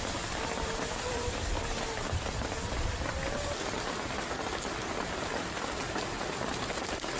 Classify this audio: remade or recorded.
remade